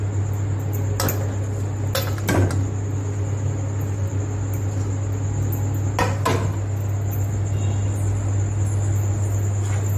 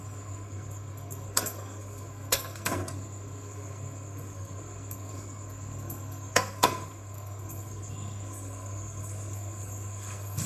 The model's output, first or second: second